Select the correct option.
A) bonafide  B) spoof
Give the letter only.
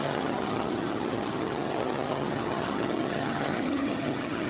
B